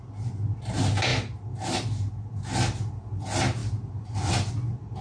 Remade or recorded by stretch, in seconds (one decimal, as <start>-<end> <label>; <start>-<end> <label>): 0.0-3.6 recorded; 3.6-4.5 remade; 4.5-5.0 recorded